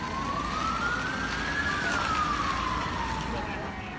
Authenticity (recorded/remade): recorded